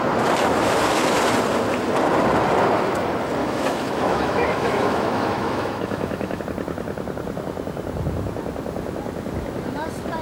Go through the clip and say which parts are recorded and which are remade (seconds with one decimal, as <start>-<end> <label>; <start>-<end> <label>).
0.0-3.4 recorded; 3.4-6.4 remade; 6.4-10.2 recorded